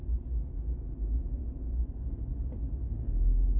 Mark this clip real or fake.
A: real